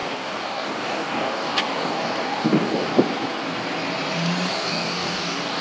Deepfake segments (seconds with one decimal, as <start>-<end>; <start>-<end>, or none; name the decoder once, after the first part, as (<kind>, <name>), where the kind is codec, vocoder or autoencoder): 0.0-2.9 (codec, DAC); 4.5-5.6